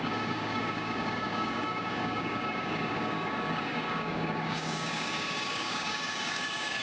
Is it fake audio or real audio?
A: fake